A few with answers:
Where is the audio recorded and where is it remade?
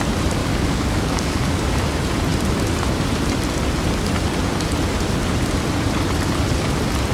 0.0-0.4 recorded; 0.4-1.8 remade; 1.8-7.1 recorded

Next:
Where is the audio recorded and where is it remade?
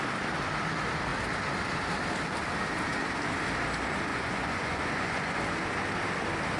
0.0-4.1 recorded; 4.1-5.4 remade; 5.4-6.6 recorded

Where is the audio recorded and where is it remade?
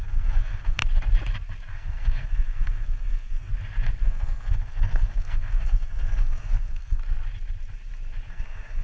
0.0-0.8 remade; 0.8-1.7 recorded; 1.7-3.5 remade; 3.5-4.0 recorded; 4.0-7.0 remade; 7.0-8.3 recorded; 8.3-8.8 remade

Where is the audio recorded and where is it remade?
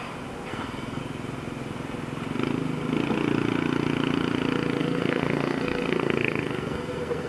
0.0-0.5 recorded; 0.5-1.0 remade; 1.0-4.8 recorded; 4.8-7.3 remade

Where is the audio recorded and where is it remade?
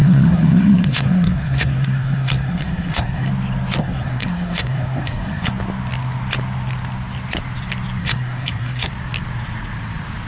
0.0-3.3 remade; 3.3-3.8 recorded; 3.8-5.5 remade; 5.5-8.0 recorded; 8.0-8.9 remade; 8.9-10.3 recorded